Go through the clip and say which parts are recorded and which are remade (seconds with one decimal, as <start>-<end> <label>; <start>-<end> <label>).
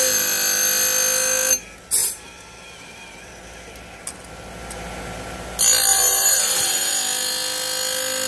0.0-2.0 recorded; 2.0-3.4 remade; 3.4-5.9 recorded; 5.9-6.9 remade; 6.9-8.3 recorded